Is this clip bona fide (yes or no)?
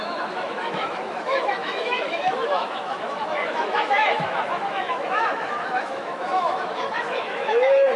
no